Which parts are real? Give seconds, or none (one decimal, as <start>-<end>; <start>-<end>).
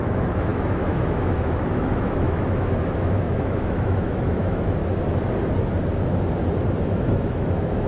4.8-6.8